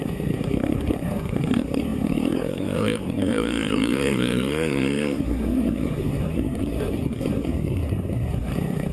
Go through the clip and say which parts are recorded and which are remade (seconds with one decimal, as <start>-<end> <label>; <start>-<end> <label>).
0.0-8.9 remade